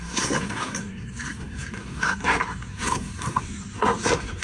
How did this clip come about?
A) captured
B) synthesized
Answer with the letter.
B